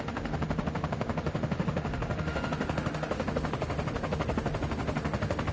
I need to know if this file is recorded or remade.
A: remade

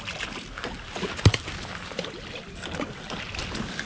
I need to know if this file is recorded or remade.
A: recorded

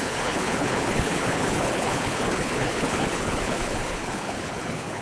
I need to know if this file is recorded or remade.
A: remade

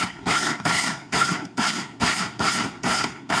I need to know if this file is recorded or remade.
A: remade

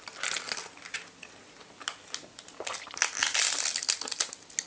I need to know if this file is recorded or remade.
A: recorded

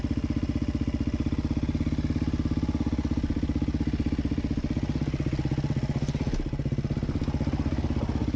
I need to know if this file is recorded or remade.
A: recorded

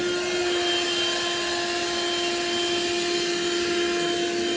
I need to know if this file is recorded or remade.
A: recorded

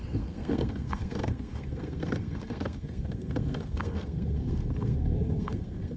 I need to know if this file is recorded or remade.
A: remade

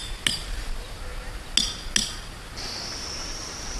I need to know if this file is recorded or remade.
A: recorded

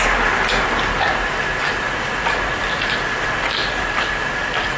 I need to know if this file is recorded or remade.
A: recorded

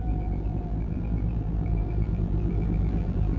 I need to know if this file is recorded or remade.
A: remade